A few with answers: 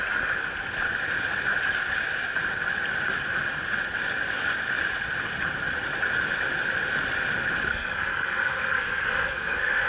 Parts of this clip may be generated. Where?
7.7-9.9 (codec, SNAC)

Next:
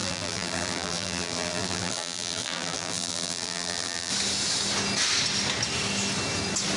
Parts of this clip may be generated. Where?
0.0-4.1 (vocoder, BigVGAN v2)

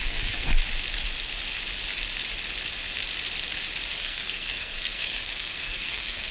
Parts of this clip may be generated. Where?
0.0-0.5 (codec, SNAC); 4.0-6.3

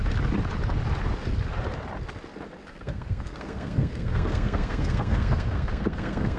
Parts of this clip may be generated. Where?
2.7-6.4 (codec, SNAC)